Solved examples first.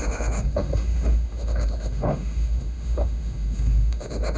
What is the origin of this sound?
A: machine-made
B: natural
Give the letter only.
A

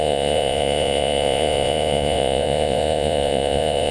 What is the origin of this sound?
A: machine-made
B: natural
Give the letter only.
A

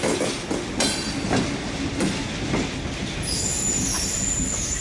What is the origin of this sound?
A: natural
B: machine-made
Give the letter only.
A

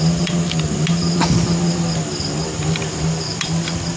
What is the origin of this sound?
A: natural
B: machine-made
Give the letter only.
B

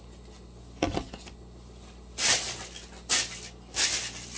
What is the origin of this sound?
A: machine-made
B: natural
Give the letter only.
B